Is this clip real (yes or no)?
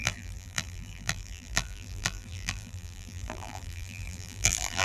no